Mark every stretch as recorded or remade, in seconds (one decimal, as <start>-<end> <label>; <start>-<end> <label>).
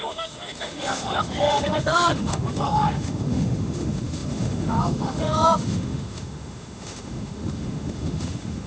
0.0-8.7 remade